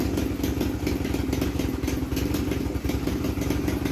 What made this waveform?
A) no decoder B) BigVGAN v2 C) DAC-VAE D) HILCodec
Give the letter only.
B